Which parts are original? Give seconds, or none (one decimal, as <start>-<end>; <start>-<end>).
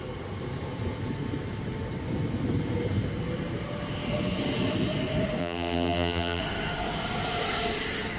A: 0.0-5.4; 6.4-8.2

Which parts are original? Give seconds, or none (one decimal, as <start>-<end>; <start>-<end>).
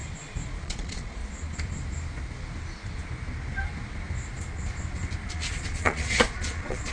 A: 0.0-0.6; 1.2-5.3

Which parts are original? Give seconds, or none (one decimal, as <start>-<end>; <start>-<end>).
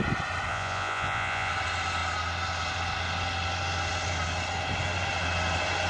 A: 0.0-0.5; 1.5-5.9